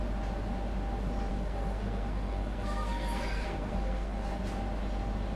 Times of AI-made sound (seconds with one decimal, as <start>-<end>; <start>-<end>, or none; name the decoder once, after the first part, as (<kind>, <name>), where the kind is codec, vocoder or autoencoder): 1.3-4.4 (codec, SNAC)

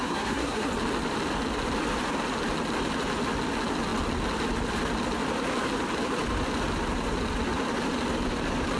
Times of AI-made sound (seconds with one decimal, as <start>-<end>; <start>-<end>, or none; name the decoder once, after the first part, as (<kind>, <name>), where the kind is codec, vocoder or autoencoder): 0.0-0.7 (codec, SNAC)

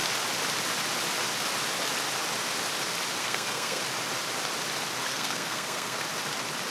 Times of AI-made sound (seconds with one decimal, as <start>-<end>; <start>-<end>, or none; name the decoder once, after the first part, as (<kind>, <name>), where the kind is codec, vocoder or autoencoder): 3.2-3.8 (codec, SNAC); 5.1-6.0

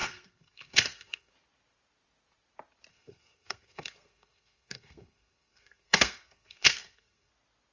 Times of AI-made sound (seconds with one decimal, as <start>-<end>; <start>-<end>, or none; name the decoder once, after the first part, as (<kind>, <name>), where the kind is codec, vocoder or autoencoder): 0.0-1.3 (codec, SNAC); 2.9-7.3

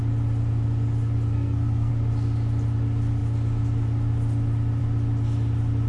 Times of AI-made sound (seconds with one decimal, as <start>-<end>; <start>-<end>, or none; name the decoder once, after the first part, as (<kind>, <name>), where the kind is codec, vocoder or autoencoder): 1.3-1.9 (codec, SNAC)

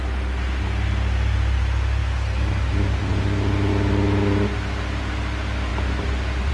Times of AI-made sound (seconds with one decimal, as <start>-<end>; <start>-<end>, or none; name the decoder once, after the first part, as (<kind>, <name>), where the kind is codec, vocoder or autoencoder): none